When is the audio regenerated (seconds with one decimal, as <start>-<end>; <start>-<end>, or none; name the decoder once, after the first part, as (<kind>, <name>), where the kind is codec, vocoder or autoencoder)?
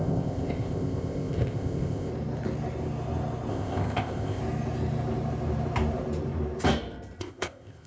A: 0.0-2.1 (codec, ZipCodec); 3.5-4.4; 7.2-7.9